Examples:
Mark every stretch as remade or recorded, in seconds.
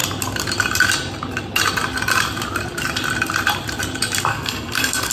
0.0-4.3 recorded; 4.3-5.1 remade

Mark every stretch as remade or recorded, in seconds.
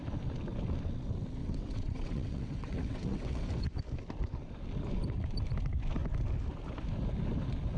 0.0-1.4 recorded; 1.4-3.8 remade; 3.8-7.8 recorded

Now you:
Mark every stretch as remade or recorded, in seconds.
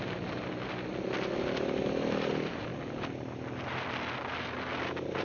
0.0-0.9 remade; 0.9-1.4 recorded; 1.4-2.7 remade; 2.7-5.2 recorded